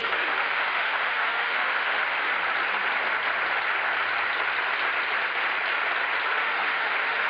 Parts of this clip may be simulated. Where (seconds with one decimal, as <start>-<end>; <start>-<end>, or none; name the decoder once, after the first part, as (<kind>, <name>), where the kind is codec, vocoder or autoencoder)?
0.0-2.3 (autoencoder, DAC-VAE); 6.3-7.3